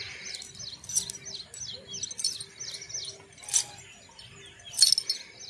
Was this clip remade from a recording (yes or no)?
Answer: no